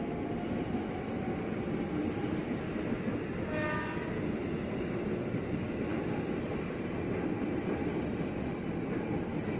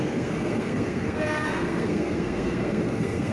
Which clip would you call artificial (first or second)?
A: second